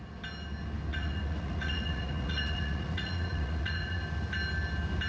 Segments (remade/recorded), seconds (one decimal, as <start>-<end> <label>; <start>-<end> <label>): 0.0-0.9 recorded; 0.9-4.0 remade; 4.0-5.1 recorded